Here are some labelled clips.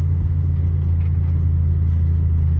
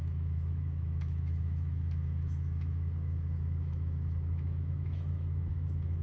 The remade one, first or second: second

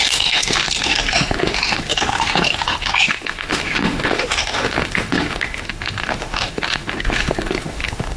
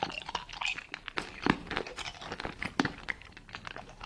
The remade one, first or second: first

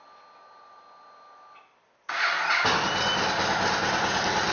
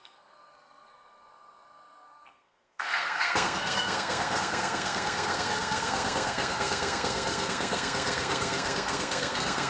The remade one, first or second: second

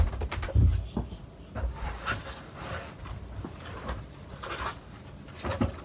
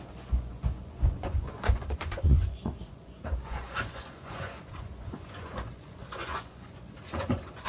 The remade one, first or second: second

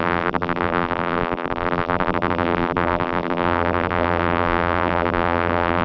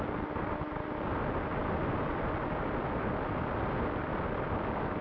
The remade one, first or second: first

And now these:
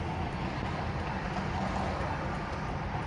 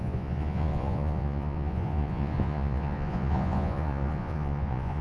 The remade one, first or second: second